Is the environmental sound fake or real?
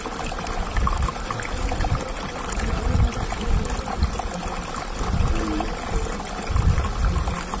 real